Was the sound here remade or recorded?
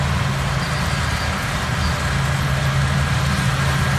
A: recorded